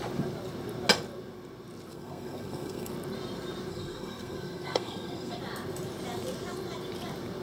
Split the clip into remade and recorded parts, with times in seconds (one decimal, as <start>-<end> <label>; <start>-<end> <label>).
0.0-1.9 recorded; 1.9-2.9 remade; 2.9-3.7 recorded; 3.7-5.4 remade; 5.4-7.4 recorded